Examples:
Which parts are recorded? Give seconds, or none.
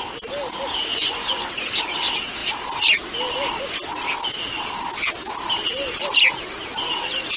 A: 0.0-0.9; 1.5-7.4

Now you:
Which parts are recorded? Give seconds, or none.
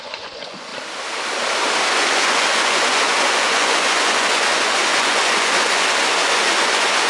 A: 0.7-1.9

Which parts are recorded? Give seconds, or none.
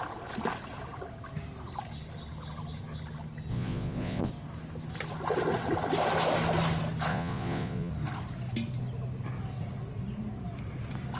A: 0.0-3.5; 4.3-7.1; 7.9-11.2